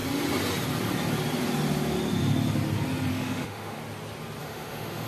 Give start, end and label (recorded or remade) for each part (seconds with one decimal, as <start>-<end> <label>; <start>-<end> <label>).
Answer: 0.0-3.1 recorded; 3.1-3.8 remade; 3.8-4.4 recorded; 4.4-5.1 remade